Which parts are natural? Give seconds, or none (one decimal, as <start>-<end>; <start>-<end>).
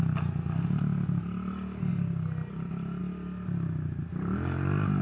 0.0-5.0